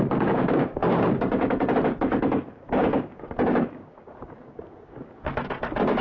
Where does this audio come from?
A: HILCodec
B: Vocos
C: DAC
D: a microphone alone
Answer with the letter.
C